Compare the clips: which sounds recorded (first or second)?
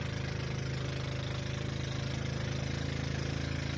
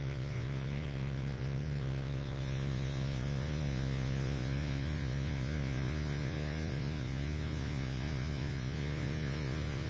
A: first